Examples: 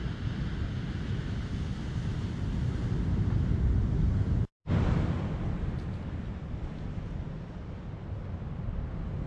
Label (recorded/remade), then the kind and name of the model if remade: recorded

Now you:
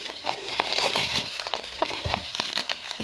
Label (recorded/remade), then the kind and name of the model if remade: remade, codec, SNAC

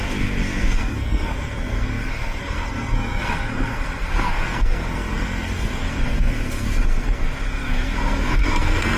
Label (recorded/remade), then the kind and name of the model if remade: remade, codec, SNAC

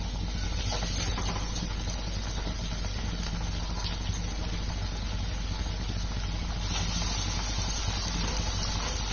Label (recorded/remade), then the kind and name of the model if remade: recorded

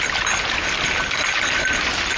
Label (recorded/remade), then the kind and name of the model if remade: recorded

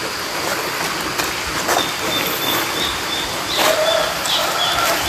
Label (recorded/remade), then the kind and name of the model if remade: recorded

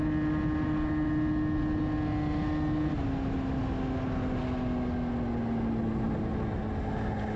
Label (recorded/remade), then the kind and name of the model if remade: recorded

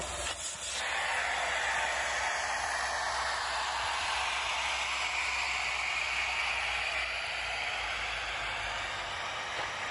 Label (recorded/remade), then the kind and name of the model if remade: recorded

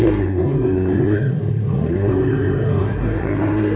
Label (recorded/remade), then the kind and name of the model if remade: remade, codec, SNAC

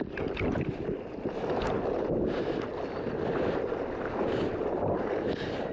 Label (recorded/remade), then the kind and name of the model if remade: recorded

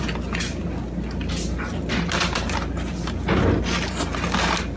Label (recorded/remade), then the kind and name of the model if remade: recorded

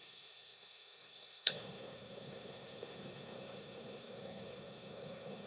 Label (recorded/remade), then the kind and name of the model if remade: remade, codec, SNAC